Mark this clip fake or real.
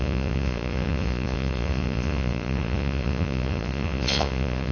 fake